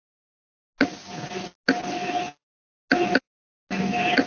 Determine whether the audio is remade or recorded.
recorded